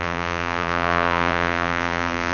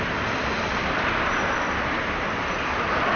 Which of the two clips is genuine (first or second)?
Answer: second